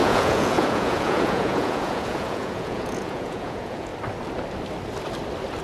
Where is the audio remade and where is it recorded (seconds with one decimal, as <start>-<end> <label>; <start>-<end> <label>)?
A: 0.0-3.9 remade; 3.9-5.6 recorded